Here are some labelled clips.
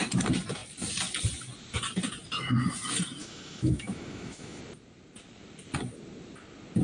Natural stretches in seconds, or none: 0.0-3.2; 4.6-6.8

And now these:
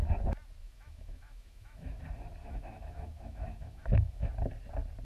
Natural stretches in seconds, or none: 0.0-0.6; 2.0-2.4; 4.3-5.0

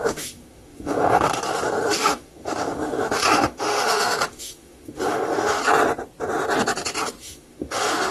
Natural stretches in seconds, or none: 5.6-7.2